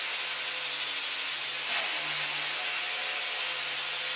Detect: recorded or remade recorded